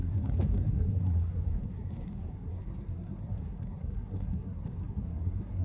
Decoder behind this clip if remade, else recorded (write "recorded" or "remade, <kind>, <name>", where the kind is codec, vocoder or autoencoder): remade, codec, SNAC